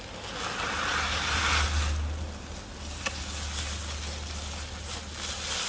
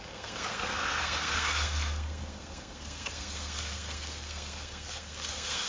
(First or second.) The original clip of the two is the first